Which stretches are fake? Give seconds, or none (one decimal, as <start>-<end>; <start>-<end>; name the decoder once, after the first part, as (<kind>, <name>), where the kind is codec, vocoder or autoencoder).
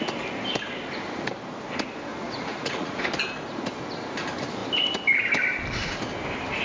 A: 2.1-3.0 (vocoder, Vocos)